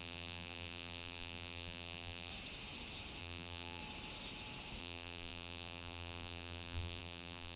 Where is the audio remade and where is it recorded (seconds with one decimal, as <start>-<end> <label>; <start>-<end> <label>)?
0.0-2.3 remade; 2.3-3.2 recorded; 3.2-3.8 remade; 3.8-4.8 recorded; 4.8-7.6 remade